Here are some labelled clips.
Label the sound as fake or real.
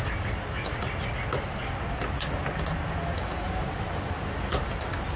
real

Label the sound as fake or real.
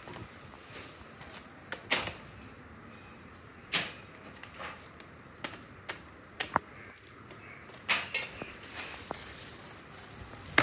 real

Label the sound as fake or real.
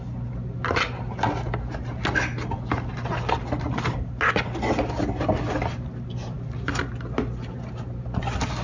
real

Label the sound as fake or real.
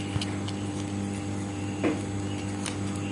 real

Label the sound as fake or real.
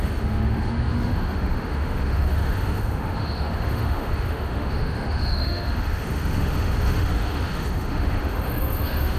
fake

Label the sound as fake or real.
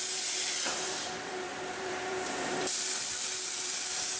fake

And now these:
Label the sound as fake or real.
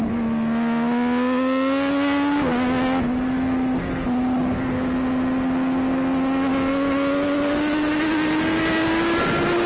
real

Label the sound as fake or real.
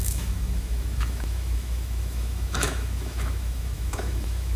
fake